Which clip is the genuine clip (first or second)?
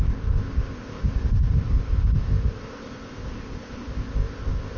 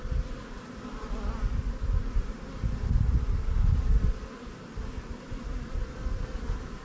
second